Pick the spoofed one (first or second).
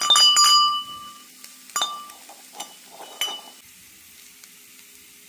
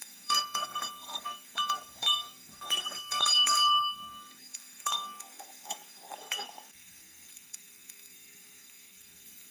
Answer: second